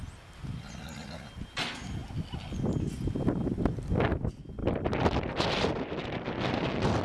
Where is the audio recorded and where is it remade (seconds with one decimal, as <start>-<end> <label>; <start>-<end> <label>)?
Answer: 0.0-7.0 recorded